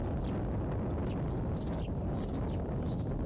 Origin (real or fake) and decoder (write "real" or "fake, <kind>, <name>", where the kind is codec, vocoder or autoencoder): real